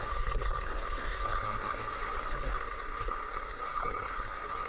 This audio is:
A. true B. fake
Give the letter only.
B